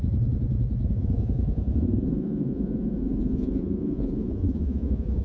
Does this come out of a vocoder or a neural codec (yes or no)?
yes